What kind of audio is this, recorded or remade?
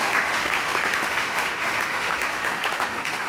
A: remade